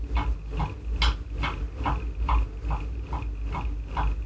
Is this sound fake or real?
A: real